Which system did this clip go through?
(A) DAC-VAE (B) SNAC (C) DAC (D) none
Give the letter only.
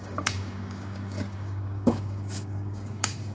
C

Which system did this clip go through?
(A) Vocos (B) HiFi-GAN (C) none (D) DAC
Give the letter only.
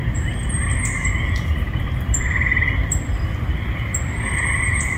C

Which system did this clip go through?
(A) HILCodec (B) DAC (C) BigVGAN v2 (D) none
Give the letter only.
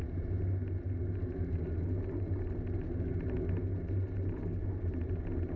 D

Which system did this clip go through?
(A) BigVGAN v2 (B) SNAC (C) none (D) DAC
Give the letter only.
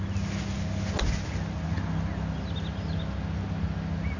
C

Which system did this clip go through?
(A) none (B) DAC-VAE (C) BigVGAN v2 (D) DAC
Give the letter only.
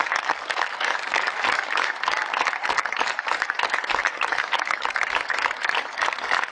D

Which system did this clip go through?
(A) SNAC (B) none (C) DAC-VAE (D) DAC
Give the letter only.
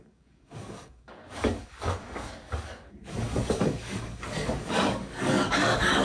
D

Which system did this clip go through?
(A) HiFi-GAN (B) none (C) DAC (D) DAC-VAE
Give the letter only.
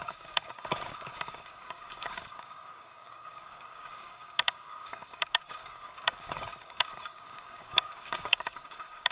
C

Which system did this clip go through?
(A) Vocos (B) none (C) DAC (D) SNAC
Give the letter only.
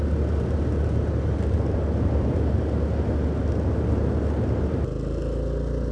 B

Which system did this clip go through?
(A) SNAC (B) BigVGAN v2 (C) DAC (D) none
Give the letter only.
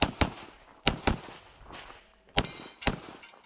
D